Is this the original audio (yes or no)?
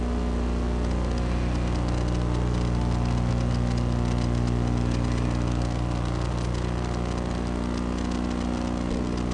yes